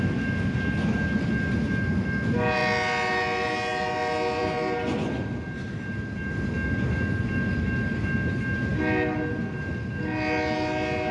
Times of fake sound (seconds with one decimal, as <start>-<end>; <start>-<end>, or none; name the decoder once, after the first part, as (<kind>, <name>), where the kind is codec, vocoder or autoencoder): none